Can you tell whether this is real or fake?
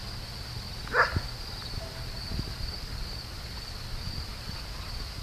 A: real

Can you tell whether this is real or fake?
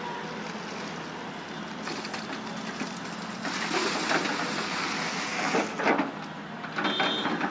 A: real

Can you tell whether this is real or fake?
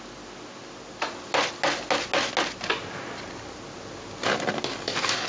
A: real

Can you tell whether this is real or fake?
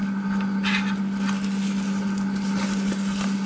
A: real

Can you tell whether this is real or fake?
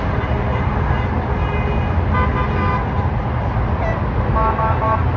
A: real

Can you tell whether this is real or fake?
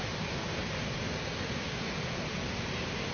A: real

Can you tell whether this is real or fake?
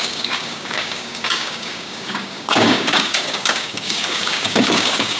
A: fake